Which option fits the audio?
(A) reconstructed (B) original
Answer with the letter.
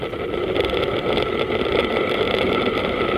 B